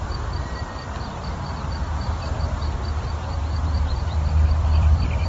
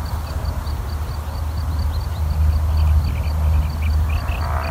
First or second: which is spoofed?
first